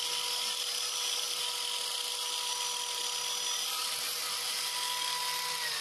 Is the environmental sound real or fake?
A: real